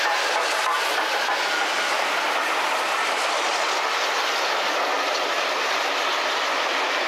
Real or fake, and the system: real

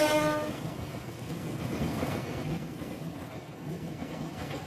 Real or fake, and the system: fake, codec, SNAC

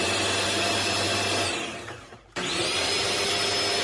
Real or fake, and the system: real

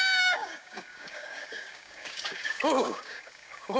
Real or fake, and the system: fake, codec, DAC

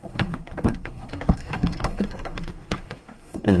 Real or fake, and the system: fake, codec, SNAC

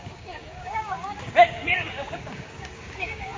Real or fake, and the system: fake, codec, DAC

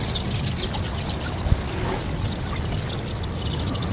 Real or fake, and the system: real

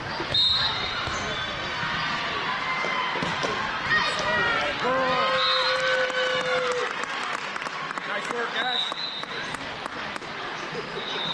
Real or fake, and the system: real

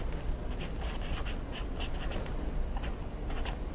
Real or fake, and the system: real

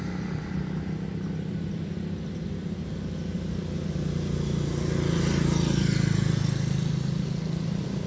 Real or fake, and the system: real